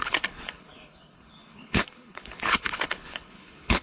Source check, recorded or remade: remade